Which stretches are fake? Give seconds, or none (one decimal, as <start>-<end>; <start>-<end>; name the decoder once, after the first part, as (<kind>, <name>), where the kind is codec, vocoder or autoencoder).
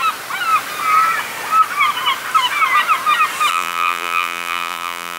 3.5-5.2 (vocoder, BigVGAN v2)